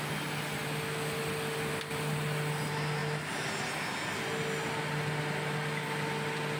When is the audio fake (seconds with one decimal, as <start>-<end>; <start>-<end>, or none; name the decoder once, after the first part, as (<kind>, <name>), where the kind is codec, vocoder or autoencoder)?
none